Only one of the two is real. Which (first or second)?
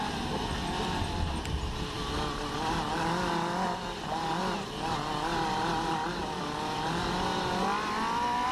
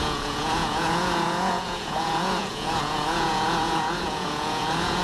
first